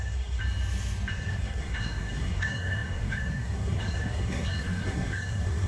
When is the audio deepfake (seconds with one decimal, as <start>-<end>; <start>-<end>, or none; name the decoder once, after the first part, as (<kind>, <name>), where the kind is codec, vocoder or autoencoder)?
0.0-0.4 (codec, SNAC); 1.1-5.7